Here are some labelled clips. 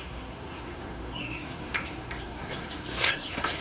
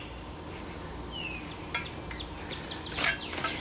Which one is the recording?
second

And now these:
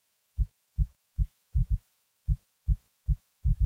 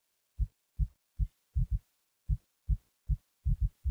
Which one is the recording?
second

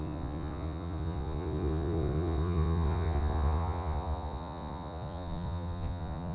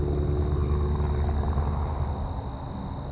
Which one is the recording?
second